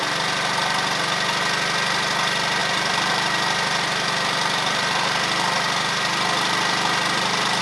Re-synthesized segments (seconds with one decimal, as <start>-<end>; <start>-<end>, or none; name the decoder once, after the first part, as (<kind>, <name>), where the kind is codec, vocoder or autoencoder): 2.6-7.6 (vocoder, BigVGAN v2)